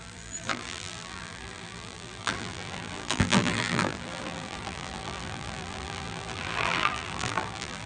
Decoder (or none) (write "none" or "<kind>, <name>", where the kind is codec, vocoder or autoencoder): vocoder, BigVGAN v2